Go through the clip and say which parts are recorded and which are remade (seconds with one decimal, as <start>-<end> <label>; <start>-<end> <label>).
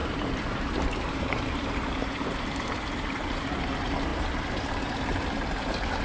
0.0-3.6 remade; 3.6-4.1 recorded; 4.1-4.9 remade; 4.9-6.0 recorded